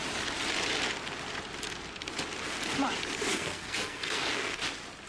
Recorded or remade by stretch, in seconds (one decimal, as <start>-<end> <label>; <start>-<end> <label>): 0.0-3.3 recorded; 3.3-4.6 remade; 4.6-5.1 recorded